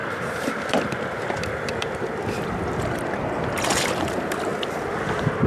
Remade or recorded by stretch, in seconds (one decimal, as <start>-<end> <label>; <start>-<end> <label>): 0.0-3.2 remade; 3.2-4.5 recorded; 4.5-5.5 remade

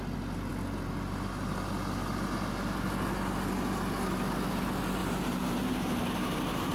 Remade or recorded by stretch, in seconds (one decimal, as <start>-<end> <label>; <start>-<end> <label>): 0.0-5.0 recorded; 5.0-6.7 remade

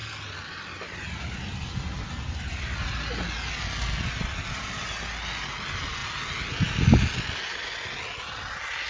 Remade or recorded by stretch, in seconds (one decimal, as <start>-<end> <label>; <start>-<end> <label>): 0.0-8.9 recorded